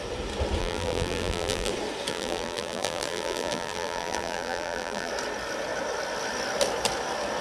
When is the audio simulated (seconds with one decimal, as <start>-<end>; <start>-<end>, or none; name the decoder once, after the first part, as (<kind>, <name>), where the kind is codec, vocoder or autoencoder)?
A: 0.6-1.7 (vocoder, BigVGAN v2); 2.1-5.1